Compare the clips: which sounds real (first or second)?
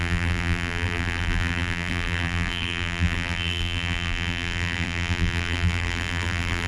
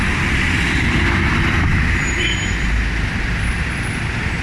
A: second